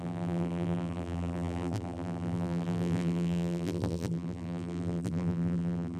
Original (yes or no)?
no